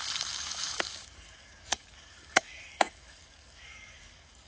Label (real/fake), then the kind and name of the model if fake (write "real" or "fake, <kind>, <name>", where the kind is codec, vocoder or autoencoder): fake, codec, DAC